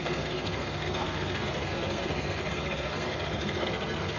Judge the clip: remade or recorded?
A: remade